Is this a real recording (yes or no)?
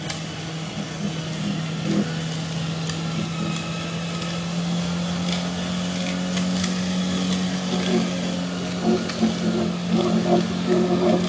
yes